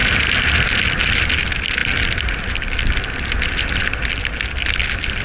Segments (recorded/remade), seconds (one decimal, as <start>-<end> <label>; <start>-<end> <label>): 0.0-5.2 recorded